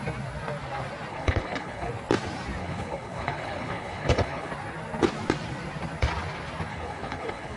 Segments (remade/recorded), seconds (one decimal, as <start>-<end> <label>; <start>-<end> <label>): 0.0-1.1 recorded; 1.1-1.9 remade; 1.9-2.6 recorded; 2.6-4.5 remade; 4.5-6.7 recorded; 6.7-7.6 remade